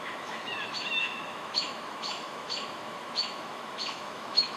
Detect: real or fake fake